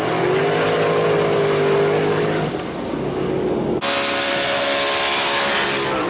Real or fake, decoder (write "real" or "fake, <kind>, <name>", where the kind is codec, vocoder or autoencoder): real